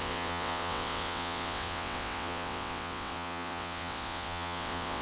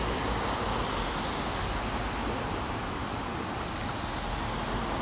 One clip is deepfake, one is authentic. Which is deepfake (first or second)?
first